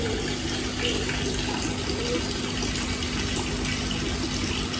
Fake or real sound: real